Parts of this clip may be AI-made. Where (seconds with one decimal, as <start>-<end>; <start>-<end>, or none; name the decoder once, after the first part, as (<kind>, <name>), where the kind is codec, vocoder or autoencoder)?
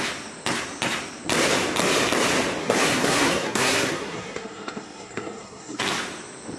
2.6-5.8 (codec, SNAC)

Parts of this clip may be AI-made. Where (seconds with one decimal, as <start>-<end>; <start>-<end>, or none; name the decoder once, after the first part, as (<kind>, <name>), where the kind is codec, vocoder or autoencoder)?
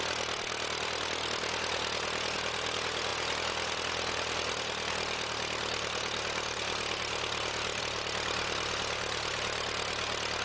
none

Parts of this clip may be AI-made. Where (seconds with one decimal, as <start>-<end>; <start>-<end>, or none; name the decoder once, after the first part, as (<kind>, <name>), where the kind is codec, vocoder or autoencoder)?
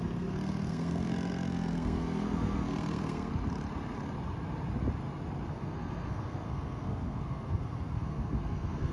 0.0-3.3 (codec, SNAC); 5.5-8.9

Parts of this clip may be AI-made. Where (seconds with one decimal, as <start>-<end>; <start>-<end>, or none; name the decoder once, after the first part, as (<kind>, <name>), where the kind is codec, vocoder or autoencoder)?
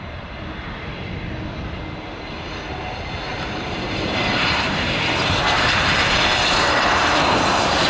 3.3-7.9 (vocoder, BigVGAN v2)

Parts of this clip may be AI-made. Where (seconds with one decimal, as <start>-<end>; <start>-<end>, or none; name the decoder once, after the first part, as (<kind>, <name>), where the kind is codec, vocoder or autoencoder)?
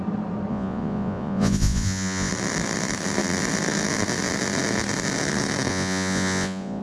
0.5-2.3 (vocoder, Vocos); 5.7-6.8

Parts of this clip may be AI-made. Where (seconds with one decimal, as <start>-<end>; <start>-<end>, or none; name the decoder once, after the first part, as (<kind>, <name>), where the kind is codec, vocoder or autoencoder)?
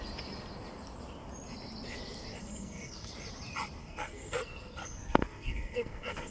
2.4-3.1 (codec, SNAC); 3.8-6.3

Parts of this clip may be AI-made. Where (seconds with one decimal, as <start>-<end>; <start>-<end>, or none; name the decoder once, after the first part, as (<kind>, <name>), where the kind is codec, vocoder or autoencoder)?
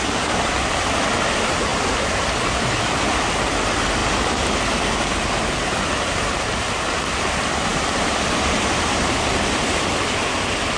7.7-9.9 (vocoder, BigVGAN v2)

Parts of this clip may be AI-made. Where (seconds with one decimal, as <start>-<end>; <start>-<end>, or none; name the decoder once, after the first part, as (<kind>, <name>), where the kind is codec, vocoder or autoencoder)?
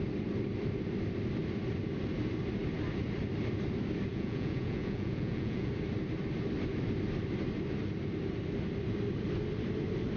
4.1-5.7 (vocoder, Vocos)